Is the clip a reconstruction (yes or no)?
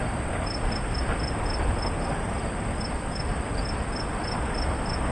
no